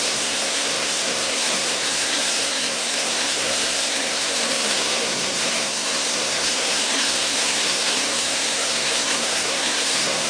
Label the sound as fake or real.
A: fake